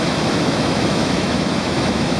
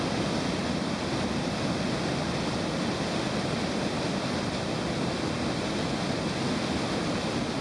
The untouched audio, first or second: second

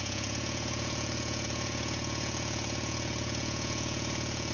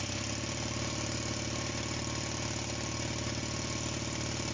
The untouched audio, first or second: second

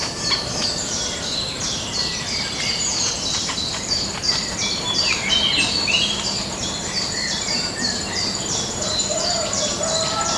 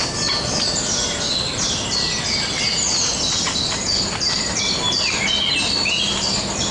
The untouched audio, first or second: second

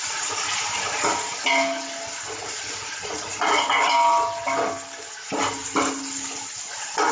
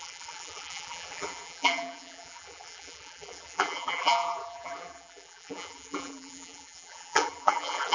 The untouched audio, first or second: first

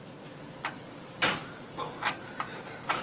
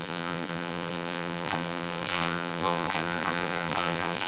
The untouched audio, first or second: first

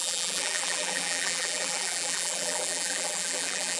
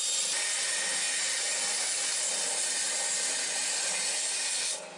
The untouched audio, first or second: second